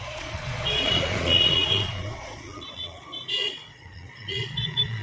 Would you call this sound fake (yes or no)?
yes